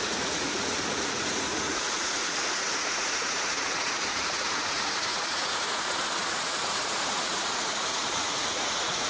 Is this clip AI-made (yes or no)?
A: yes